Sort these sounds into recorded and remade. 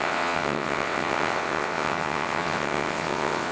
remade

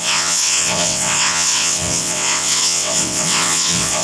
remade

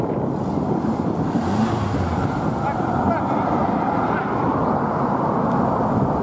recorded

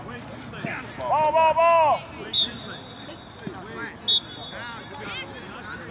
recorded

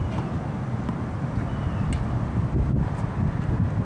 recorded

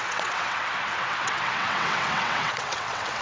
remade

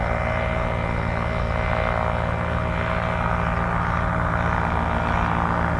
recorded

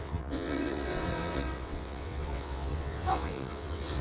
remade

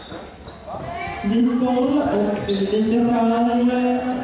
recorded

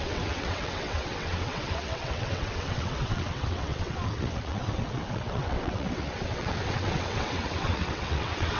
remade